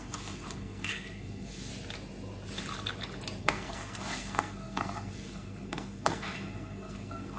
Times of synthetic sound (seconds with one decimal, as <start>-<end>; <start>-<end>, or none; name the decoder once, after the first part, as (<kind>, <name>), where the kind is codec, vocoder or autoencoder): 0.0-1.7 (codec, SNAC); 3.4-7.4